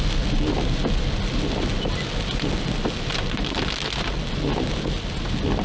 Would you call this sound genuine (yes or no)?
yes